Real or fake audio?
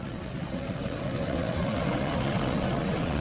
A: fake